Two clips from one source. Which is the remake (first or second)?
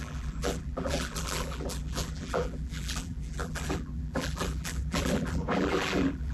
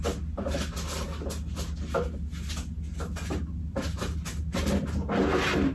first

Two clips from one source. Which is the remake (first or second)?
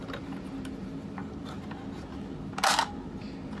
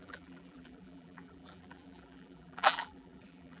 second